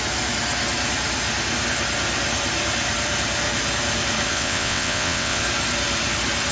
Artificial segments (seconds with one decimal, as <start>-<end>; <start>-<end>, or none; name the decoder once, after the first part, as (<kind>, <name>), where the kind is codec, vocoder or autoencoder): 4.3-5.4 (vocoder, WaveNeXt)